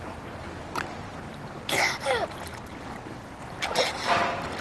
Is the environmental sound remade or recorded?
recorded